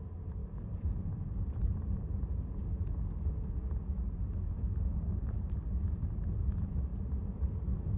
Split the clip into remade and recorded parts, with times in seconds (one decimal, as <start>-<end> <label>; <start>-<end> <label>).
0.0-0.4 recorded; 0.4-2.2 remade; 2.2-5.2 recorded; 5.2-5.8 remade; 5.8-6.9 recorded; 6.9-7.5 remade; 7.5-8.0 recorded